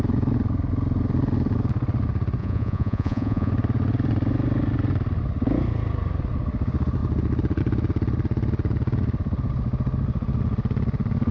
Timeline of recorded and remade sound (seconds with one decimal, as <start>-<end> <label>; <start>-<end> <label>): 0.0-2.4 recorded; 2.4-3.5 remade; 3.5-11.3 recorded